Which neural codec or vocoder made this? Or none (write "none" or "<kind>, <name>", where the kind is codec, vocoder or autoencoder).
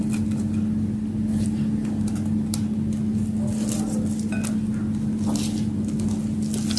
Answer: none